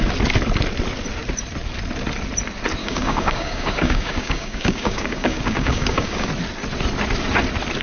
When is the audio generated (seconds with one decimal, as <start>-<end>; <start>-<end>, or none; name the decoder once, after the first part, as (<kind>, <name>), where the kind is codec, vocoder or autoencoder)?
2.8-6.3 (codec, DAC)